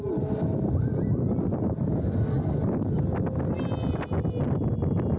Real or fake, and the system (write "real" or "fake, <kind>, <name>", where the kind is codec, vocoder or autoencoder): real